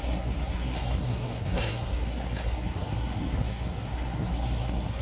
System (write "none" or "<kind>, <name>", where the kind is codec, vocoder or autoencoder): codec, SNAC